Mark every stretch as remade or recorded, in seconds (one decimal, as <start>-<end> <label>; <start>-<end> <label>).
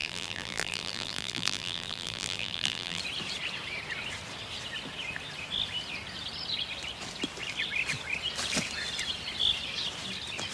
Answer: 0.0-3.0 remade; 3.0-10.5 recorded